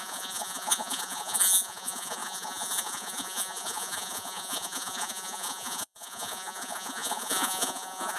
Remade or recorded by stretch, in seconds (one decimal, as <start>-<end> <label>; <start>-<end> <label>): 0.0-8.2 remade